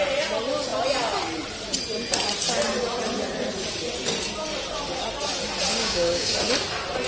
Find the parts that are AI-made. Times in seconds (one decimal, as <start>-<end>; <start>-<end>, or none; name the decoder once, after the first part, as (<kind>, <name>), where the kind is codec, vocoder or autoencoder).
5.7-6.3 (codec, DAC)